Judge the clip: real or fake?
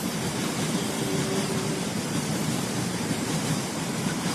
fake